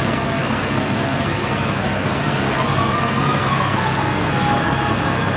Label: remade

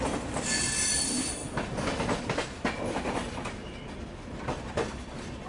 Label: recorded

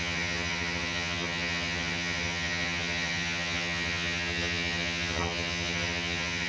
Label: remade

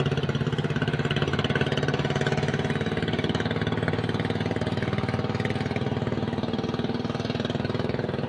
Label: recorded